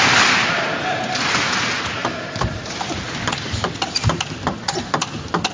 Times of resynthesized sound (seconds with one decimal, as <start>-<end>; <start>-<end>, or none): 0.4-1.0; 2.0-4.9